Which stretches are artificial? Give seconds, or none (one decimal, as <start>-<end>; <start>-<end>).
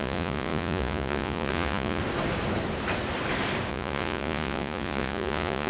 0.0-2.0; 3.7-5.7